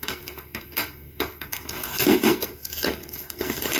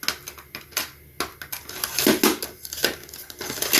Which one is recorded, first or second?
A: second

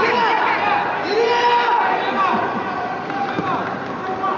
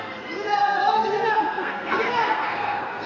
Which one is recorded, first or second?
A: first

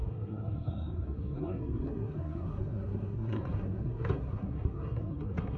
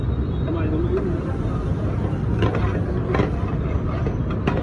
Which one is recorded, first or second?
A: second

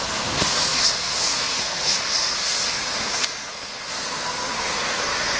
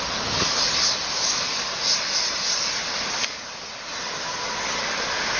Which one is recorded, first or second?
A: second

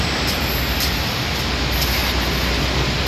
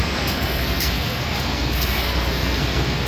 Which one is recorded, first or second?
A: first